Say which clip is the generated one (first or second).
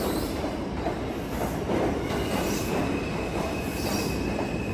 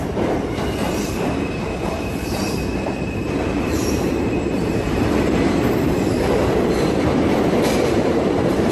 second